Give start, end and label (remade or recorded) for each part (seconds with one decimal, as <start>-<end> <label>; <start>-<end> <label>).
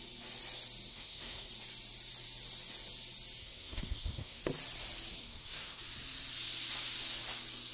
0.0-0.9 recorded; 0.9-1.5 remade; 1.5-3.4 recorded; 3.4-4.4 remade; 4.4-5.2 recorded; 5.2-5.8 remade; 5.8-7.7 recorded